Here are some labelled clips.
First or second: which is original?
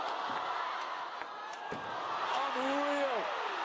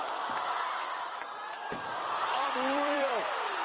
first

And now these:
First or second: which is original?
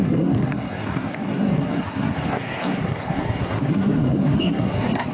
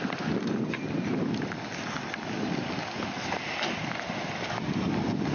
second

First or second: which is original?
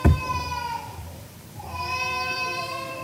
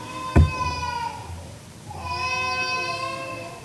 second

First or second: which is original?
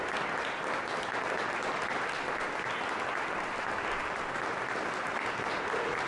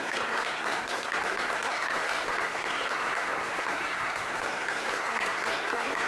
first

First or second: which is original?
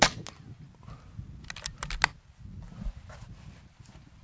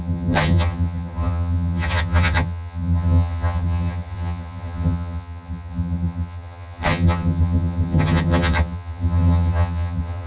first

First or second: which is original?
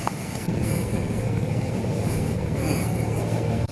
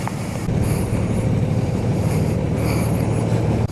second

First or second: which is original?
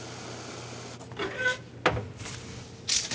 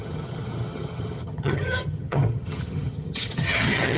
first